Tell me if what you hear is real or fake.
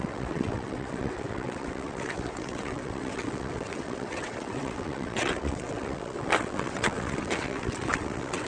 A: fake